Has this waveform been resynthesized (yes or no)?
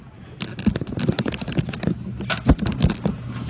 no